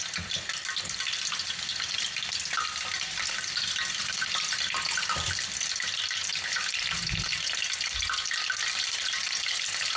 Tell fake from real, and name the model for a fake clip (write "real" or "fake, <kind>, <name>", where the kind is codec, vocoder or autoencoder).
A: real